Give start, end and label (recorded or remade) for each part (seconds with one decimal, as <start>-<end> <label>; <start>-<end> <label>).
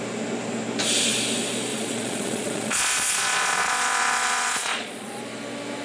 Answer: 0.0-1.7 recorded; 1.7-5.2 remade; 5.2-5.8 recorded